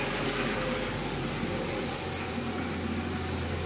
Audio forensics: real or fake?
real